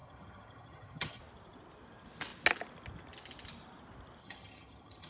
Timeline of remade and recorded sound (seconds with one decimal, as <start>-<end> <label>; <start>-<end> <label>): 0.0-1.2 remade; 1.2-4.2 recorded; 4.2-5.1 remade